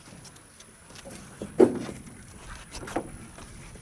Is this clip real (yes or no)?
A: yes